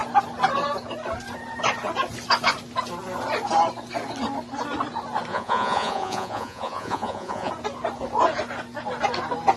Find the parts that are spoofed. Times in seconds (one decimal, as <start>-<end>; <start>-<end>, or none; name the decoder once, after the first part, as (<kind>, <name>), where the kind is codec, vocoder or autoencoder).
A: 5.3-7.5 (vocoder, Vocos)